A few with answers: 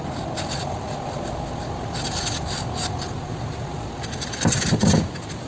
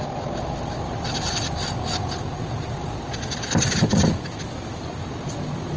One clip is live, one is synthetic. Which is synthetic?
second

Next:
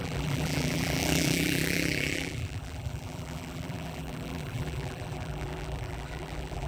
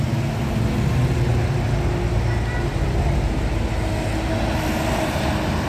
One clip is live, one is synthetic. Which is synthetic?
first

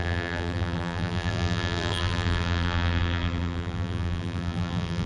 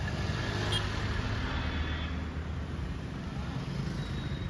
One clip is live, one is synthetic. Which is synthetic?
first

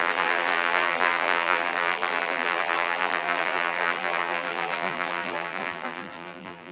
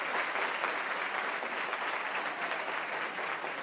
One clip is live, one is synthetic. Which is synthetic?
first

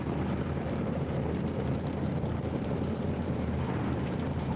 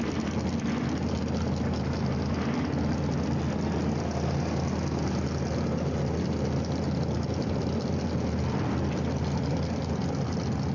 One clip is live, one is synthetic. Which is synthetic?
first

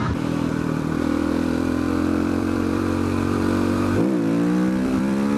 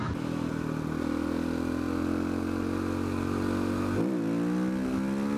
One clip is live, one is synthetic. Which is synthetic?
first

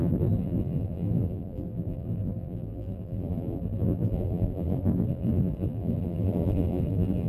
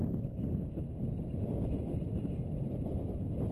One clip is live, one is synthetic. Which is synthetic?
first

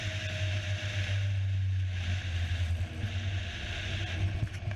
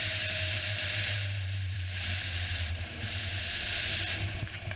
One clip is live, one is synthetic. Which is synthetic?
second